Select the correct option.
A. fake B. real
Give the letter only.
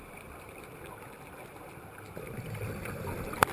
B